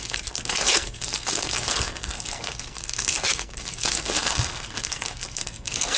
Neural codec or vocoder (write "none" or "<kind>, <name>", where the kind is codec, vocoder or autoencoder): codec, SNAC